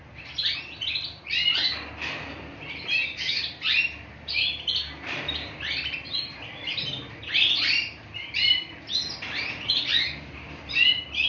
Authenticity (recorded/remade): remade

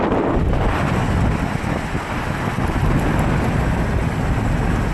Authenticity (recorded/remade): recorded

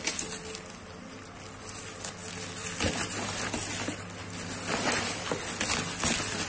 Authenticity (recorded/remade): recorded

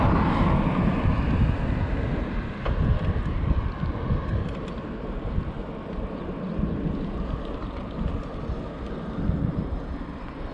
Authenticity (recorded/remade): recorded